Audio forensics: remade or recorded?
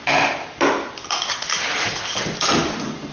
recorded